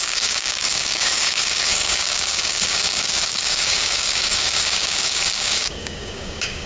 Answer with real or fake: fake